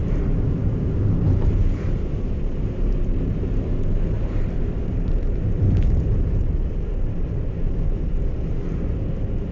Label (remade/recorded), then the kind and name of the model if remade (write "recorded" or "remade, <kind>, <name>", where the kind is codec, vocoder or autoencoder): recorded